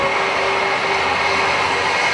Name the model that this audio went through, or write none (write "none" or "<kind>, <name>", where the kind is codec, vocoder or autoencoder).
none